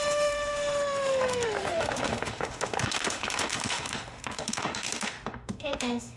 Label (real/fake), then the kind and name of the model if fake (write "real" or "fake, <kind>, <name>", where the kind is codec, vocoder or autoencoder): fake, autoencoder, DAC-VAE